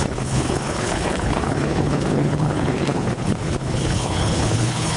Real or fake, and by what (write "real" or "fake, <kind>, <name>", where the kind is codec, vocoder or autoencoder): fake, codec, HILCodec